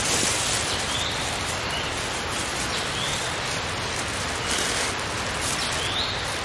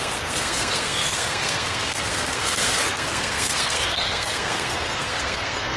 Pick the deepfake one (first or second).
second